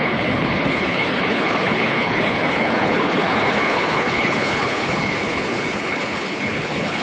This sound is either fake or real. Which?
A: fake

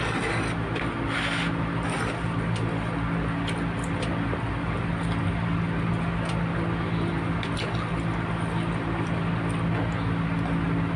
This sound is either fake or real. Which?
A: real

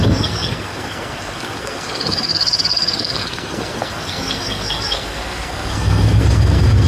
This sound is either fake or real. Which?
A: fake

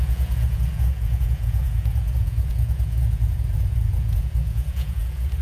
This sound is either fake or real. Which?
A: fake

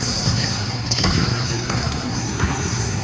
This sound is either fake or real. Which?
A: fake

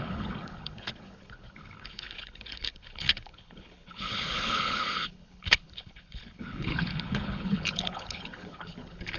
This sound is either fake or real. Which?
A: fake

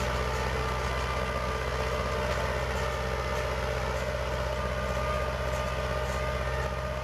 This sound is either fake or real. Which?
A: real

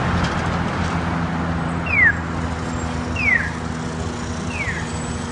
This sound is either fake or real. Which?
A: real